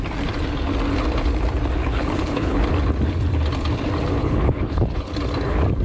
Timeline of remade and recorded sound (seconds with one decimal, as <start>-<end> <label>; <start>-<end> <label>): 0.0-1.8 recorded; 1.8-2.6 remade; 2.6-4.2 recorded; 4.2-5.1 remade; 5.1-5.8 recorded

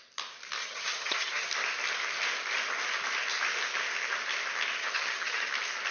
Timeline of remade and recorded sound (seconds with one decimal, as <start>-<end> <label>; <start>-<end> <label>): 0.0-0.6 recorded; 0.6-1.5 remade; 1.5-4.8 recorded; 4.8-5.5 remade; 5.5-5.9 recorded

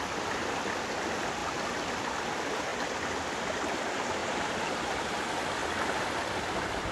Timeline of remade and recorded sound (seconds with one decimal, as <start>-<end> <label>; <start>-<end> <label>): 0.0-4.2 recorded; 4.2-4.9 remade; 4.9-5.6 recorded; 5.6-6.4 remade; 6.4-6.9 recorded

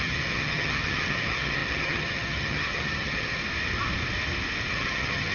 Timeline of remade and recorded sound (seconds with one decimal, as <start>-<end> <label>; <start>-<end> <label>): 0.0-3.4 remade; 3.4-4.7 recorded; 4.7-5.3 remade

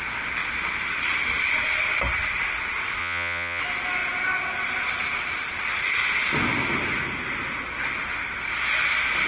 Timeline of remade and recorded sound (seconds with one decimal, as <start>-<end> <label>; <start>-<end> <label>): 0.0-3.0 recorded; 3.0-3.6 remade; 3.6-9.3 recorded